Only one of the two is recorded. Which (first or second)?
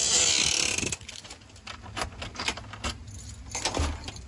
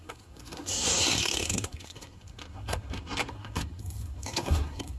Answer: first